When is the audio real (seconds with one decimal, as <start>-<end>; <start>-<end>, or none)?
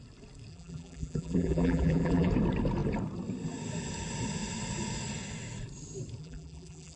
0.0-0.5; 2.3-6.2